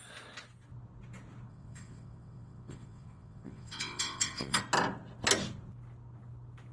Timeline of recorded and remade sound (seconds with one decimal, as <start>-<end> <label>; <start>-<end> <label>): 0.0-1.5 recorded; 1.5-4.6 remade; 4.6-6.7 recorded